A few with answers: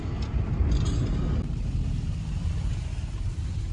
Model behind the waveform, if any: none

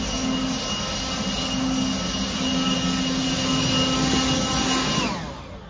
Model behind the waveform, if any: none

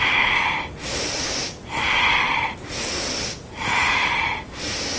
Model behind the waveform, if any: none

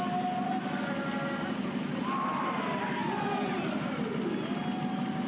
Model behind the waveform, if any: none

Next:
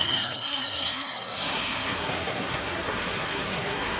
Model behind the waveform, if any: codec, SNAC